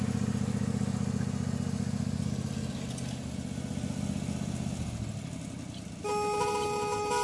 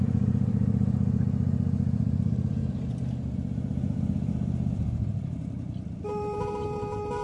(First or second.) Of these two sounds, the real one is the first